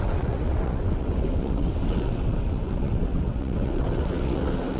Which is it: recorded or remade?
remade